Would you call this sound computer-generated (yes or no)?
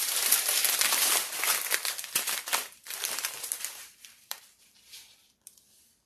yes